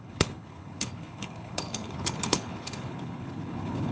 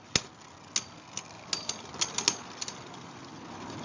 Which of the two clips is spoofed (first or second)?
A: first